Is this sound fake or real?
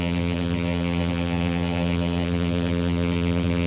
fake